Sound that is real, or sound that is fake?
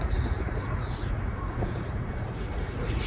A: fake